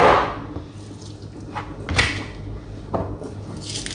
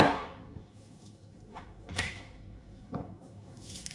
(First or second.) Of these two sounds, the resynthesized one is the second